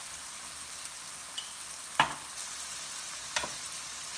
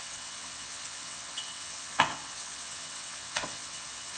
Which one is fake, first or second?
second